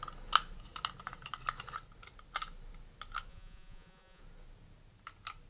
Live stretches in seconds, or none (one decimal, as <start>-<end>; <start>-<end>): 0.0-3.3; 4.2-5.5